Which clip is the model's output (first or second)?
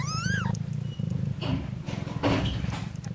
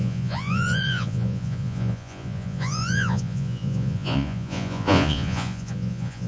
second